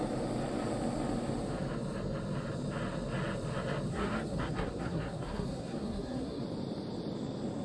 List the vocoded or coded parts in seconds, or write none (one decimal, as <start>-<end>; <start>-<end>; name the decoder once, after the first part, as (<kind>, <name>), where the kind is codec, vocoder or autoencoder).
3.9-6.4 (codec, SNAC)